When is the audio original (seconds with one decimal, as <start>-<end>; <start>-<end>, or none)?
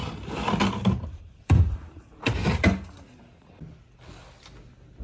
0.0-1.2; 2.4-5.0